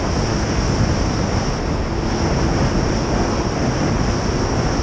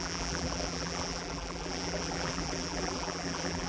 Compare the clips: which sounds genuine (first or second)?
first